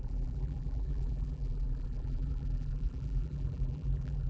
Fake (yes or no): yes